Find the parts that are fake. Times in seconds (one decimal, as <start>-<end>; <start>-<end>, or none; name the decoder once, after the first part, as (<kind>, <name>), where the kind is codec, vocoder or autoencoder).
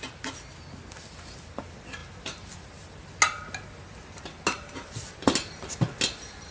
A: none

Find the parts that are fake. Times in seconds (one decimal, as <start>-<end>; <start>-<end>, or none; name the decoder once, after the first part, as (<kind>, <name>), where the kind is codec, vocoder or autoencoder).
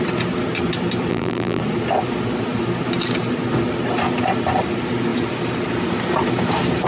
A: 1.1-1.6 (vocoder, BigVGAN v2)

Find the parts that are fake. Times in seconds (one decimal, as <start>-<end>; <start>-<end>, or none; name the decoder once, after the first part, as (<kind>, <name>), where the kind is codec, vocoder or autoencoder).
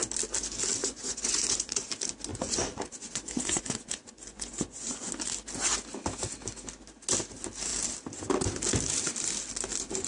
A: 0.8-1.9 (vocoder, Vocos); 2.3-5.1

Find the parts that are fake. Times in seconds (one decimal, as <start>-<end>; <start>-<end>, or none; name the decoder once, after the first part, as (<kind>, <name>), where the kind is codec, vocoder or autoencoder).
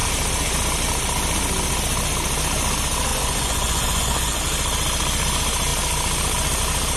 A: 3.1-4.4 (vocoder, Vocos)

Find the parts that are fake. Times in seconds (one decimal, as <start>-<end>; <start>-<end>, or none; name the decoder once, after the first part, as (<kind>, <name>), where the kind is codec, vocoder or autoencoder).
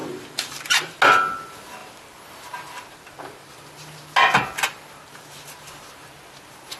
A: 0.0-1.0 (vocoder, BigVGAN v2)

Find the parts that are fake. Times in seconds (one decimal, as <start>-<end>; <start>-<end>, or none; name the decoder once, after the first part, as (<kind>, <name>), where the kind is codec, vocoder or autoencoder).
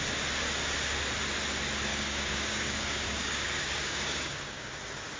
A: 1.9-4.7 (codec, DAC)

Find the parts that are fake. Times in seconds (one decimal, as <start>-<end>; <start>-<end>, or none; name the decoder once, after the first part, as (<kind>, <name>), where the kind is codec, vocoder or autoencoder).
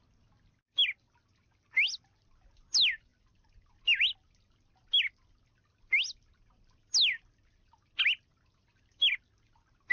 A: none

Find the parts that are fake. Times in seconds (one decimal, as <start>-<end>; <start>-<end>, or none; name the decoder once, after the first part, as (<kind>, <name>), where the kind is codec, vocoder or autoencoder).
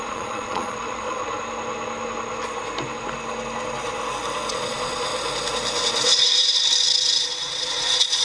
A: 0.0-1.2 (vocoder, Vocos); 4.5-5.1; 7.2-8.2